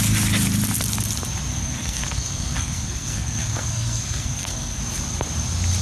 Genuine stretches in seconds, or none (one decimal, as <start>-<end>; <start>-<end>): 0.0-1.5; 4.8-5.8